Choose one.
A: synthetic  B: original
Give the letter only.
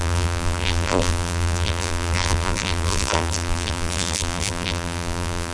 A